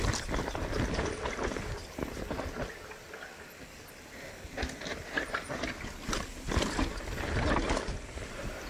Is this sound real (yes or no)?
yes